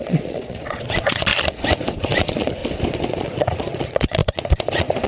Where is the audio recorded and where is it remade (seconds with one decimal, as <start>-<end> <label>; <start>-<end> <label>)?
0.0-1.3 remade; 1.3-2.0 recorded; 2.0-2.6 remade; 2.6-3.2 recorded; 3.2-5.1 remade